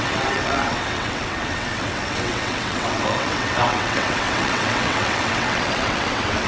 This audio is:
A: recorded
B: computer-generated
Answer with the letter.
B